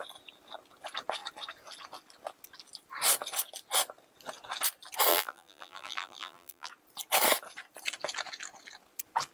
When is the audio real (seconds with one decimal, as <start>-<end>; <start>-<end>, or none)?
0.0-5.1; 6.7-9.3